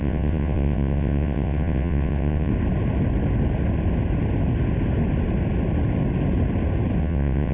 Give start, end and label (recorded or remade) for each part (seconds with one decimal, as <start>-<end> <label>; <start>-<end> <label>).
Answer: 0.0-2.5 remade; 2.5-7.0 recorded; 7.0-7.5 remade